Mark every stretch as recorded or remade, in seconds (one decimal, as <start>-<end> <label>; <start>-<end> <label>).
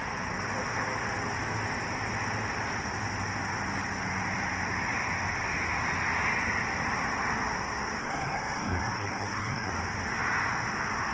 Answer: 0.0-8.0 recorded; 8.0-9.7 remade; 9.7-11.1 recorded